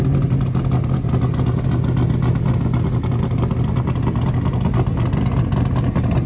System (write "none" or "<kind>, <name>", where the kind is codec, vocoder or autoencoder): none